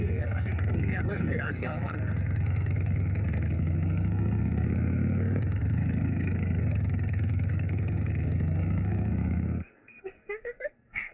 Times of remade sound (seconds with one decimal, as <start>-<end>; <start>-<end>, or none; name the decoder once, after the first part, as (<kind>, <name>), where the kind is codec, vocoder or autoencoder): 0.0-11.1 (codec, SNAC)